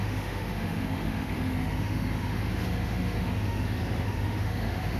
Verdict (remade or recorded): remade